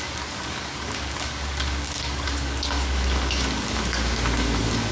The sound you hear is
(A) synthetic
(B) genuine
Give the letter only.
A